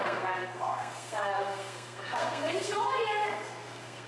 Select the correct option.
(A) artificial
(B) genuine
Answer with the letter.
A